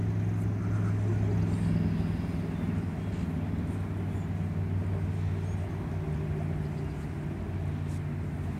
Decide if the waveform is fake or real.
real